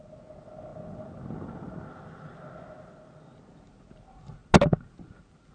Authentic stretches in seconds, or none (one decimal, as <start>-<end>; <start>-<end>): 0.0-5.5

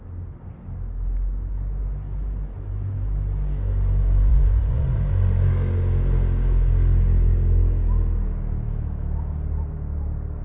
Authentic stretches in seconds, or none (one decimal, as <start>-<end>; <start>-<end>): 0.0-4.3; 5.0-10.4

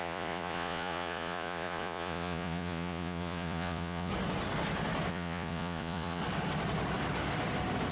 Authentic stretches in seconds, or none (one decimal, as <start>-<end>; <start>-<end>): 4.1-5.1; 6.2-7.9